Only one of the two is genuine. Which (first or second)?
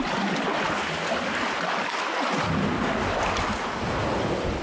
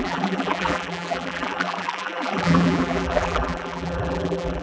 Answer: first